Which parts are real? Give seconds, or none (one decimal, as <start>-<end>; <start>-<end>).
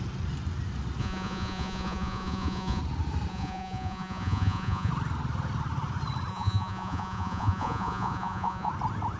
0.0-1.0; 2.8-3.3; 4.9-6.3; 8.7-9.2